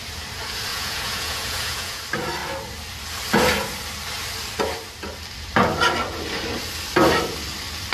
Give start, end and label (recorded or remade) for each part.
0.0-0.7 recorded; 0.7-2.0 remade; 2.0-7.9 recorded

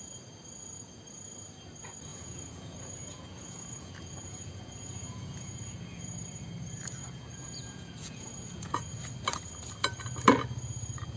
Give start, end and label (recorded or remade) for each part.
0.0-2.1 recorded; 2.1-6.0 remade; 6.0-7.0 recorded; 7.0-9.0 remade; 9.0-11.2 recorded

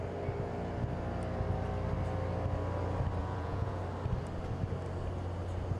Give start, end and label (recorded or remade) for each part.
0.0-3.2 recorded; 3.2-3.8 remade; 3.8-5.8 recorded